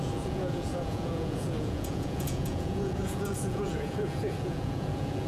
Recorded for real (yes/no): no